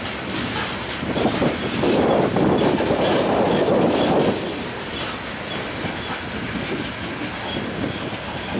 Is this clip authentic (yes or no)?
yes